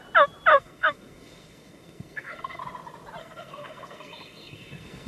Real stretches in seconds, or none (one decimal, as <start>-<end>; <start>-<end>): 0.0-0.5; 2.6-3.2